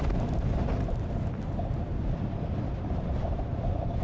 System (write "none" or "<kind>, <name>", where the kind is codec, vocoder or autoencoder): vocoder, BigVGAN v2